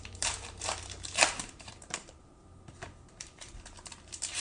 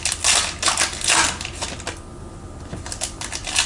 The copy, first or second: first